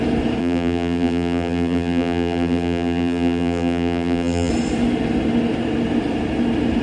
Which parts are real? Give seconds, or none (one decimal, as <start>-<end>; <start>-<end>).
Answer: 0.0-0.4; 4.5-6.8